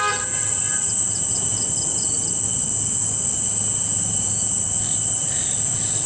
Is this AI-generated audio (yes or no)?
no